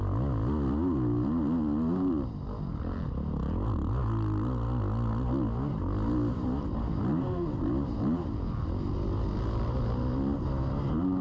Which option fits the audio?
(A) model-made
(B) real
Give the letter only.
B